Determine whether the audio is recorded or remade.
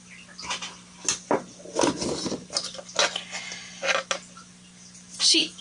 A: recorded